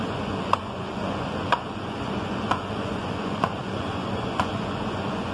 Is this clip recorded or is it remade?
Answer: remade